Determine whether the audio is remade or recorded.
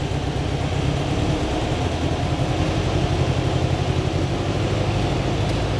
recorded